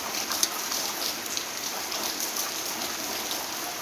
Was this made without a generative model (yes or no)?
no